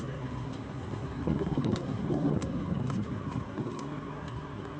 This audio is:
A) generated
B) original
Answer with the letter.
A